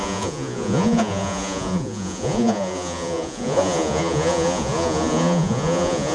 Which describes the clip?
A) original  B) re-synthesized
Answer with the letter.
B